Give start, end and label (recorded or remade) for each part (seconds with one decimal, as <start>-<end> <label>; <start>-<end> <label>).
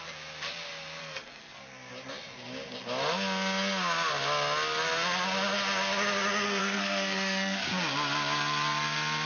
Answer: 0.0-1.0 recorded; 1.0-1.6 remade; 1.6-6.6 recorded; 6.6-7.6 remade; 7.6-9.3 recorded